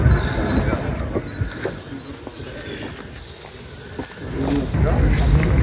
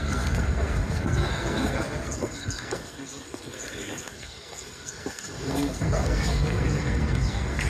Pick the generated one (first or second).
second